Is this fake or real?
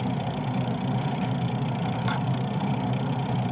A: real